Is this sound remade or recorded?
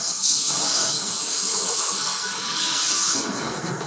remade